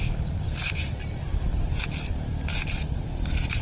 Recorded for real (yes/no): yes